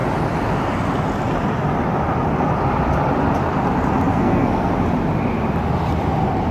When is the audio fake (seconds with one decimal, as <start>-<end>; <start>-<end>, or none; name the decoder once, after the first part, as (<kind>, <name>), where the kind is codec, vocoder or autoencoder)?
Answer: 4.1-4.7 (codec, SNAC)